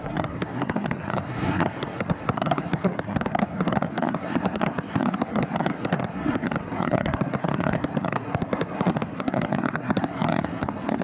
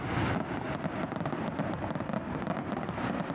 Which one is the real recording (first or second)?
second